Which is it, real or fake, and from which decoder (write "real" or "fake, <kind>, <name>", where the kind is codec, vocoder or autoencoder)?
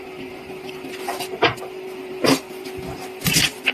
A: real